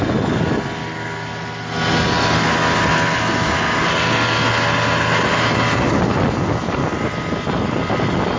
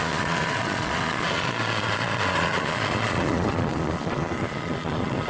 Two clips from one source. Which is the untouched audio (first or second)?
first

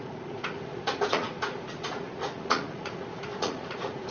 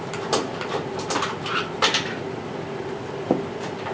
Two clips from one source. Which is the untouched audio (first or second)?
second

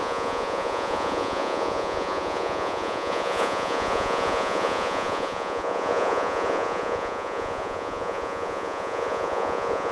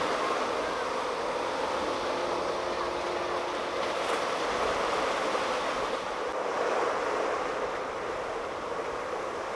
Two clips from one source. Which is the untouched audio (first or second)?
second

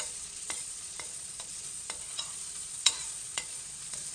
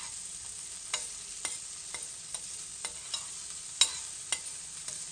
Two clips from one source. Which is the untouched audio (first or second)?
second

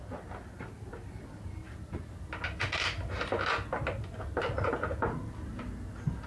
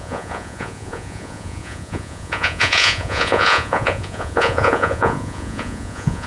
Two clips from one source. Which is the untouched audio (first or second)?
first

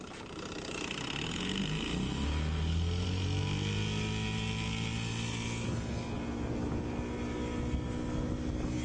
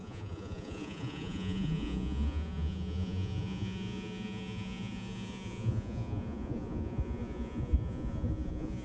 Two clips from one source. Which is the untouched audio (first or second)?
first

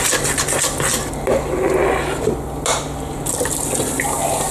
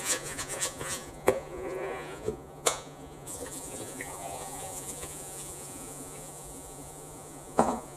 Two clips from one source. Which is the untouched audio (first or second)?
first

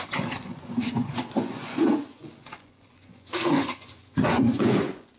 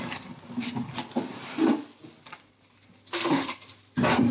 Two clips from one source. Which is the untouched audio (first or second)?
second